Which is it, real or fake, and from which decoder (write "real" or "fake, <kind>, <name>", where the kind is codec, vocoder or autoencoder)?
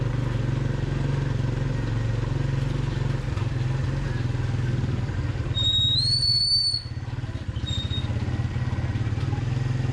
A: real